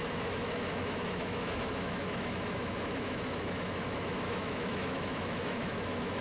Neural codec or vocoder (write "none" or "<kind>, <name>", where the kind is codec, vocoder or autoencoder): autoencoder, DAC-VAE